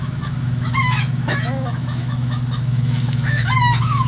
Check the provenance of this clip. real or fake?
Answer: fake